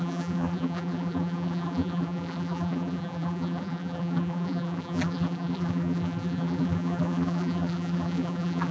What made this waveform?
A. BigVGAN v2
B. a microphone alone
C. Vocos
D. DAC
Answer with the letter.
A